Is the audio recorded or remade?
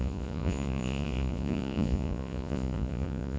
remade